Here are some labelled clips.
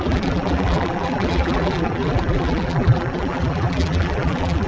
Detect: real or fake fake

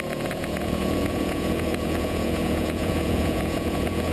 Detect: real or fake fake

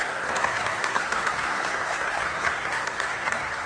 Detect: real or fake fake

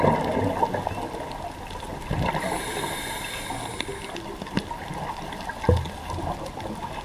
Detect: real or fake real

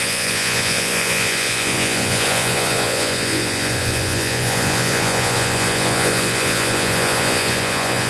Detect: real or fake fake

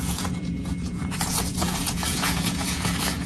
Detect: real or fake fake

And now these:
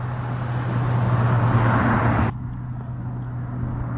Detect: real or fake real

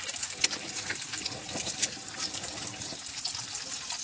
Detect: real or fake real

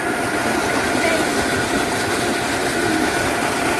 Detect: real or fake real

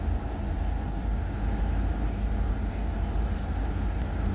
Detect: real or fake real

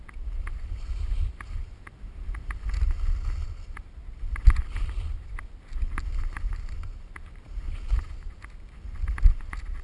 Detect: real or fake real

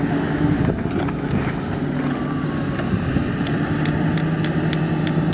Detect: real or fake real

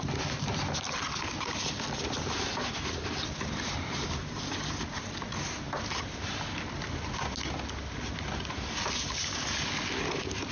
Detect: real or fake real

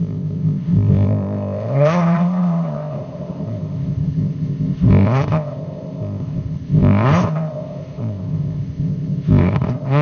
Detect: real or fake fake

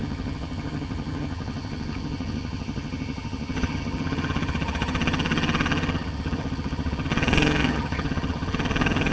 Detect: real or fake fake